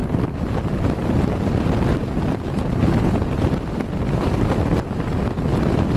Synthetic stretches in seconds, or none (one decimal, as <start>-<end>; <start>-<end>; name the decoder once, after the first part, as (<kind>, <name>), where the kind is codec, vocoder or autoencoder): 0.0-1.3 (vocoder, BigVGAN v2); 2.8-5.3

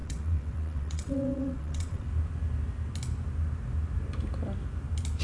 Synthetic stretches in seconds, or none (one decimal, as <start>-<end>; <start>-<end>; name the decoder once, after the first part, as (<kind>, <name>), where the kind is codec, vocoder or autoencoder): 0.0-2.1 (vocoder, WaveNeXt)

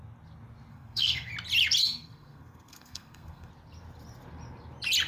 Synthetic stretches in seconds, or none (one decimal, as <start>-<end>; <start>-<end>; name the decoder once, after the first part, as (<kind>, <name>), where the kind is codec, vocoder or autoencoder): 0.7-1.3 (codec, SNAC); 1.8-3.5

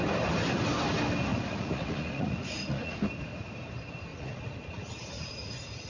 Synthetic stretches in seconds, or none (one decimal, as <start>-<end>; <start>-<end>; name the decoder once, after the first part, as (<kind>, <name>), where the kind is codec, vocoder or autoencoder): 1.3-3.0 (vocoder, Vocos); 4.1-5.5

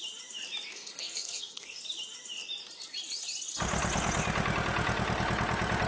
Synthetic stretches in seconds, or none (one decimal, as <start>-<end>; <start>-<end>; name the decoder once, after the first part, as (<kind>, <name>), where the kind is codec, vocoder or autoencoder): 0.7-1.8 (codec, SNAC)

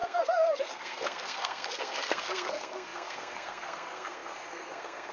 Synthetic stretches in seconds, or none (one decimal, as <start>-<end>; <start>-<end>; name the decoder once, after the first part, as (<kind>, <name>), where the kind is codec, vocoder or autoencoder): 0.0-5.1 (codec, SNAC)

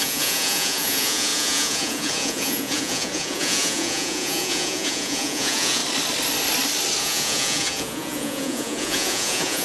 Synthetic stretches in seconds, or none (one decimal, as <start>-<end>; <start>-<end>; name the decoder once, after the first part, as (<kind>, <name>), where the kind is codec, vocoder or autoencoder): 0.0-5.8 (vocoder, Vocos); 7.0-9.6